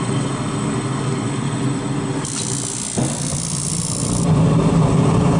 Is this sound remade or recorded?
recorded